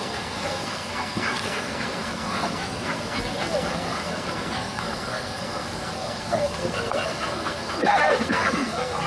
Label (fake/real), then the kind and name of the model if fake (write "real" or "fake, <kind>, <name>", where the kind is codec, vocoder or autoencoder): fake, codec, SNAC